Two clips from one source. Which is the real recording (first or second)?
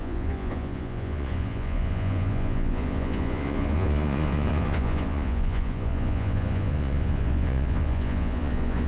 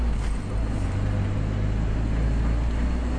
second